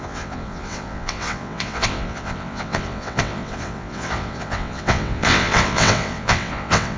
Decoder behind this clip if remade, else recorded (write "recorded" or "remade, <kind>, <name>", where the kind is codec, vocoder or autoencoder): remade, vocoder, WaveNeXt